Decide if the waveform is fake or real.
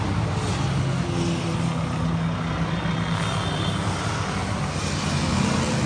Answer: real